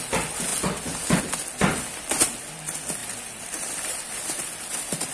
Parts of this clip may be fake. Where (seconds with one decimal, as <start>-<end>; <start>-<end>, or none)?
3.0-5.1